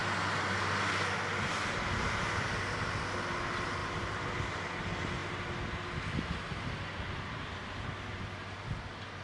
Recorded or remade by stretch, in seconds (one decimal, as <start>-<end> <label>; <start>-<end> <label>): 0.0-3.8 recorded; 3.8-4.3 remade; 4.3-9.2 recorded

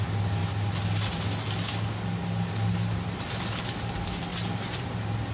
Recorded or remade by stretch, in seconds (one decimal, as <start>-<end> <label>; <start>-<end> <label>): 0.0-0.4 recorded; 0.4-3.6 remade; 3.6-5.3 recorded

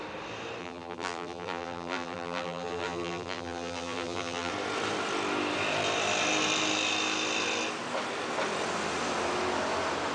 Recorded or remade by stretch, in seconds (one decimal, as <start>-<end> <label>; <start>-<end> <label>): 0.0-0.6 recorded; 0.6-4.5 remade; 4.5-10.1 recorded

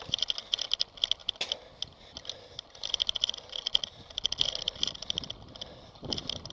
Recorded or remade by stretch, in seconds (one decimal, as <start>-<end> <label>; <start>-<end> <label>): 0.0-6.5 recorded

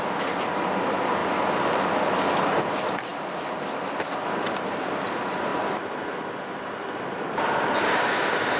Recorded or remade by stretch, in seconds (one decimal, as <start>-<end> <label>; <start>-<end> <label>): 0.0-1.2 remade; 1.2-2.6 recorded; 2.6-8.6 remade

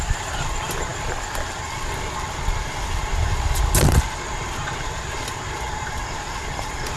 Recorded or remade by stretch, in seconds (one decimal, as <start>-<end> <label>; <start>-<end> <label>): 0.0-7.0 remade